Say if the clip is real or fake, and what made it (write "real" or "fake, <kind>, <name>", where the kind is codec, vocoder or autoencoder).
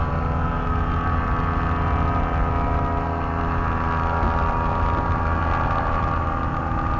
real